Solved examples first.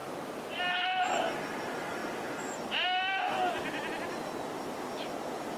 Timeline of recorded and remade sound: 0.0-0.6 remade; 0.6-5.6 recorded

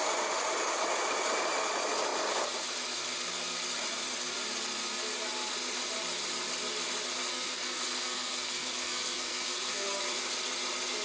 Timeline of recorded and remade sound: 0.0-7.3 recorded; 7.3-10.0 remade; 10.0-11.0 recorded

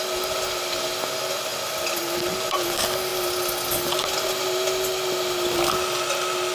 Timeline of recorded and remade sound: 0.0-1.5 recorded; 1.5-2.4 remade; 2.4-6.5 recorded

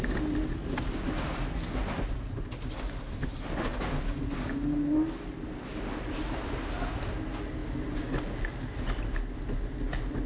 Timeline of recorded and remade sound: 0.0-10.3 recorded

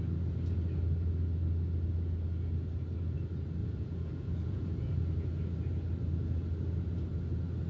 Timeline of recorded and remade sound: 0.0-3.6 recorded; 3.6-4.9 remade; 4.9-7.7 recorded